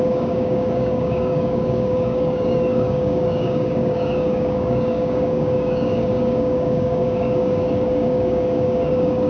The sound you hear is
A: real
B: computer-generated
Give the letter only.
B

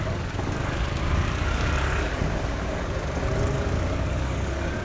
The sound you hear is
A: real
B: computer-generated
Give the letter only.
B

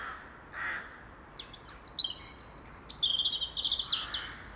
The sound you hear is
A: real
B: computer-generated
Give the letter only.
A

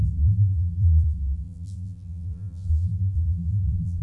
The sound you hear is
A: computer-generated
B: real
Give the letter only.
A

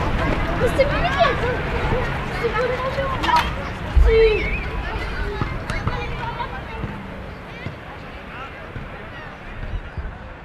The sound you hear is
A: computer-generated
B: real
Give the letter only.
B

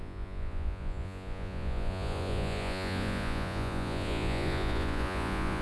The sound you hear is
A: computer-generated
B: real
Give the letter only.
A